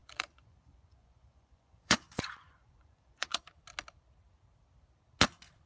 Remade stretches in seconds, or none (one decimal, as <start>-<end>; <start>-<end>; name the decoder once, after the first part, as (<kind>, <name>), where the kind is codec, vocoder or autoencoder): 0.0-3.4 (vocoder, Vocos)